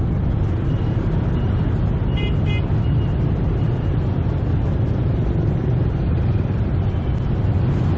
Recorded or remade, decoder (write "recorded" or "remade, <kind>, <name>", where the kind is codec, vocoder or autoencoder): recorded